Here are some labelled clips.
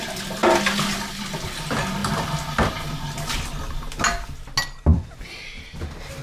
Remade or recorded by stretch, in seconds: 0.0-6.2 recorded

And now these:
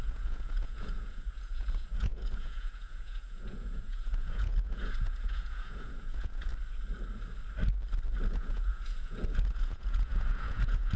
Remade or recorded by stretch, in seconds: 0.0-6.5 remade; 6.5-8.3 recorded; 8.3-11.0 remade

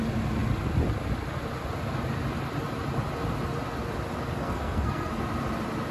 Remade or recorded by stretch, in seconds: 0.0-4.4 recorded; 4.4-5.1 remade; 5.1-5.9 recorded

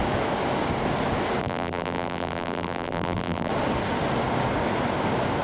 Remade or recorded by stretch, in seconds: 0.0-1.4 recorded; 1.4-3.5 remade; 3.5-5.4 recorded

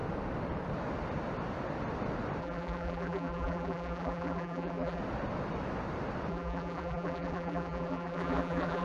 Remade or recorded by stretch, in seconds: 0.0-2.4 recorded; 2.4-5.0 remade; 5.0-6.3 recorded; 6.3-8.8 remade

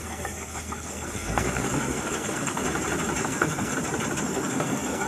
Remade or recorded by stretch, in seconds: 0.0-2.6 remade; 2.6-3.2 recorded; 3.2-3.7 remade; 3.7-4.2 recorded; 4.2-5.1 remade

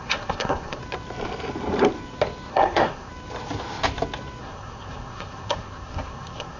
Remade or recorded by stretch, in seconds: 0.0-0.8 remade; 0.8-2.5 recorded; 2.5-3.1 remade; 3.1-4.4 recorded; 4.4-6.6 remade